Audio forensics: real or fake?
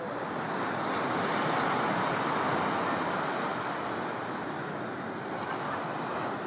real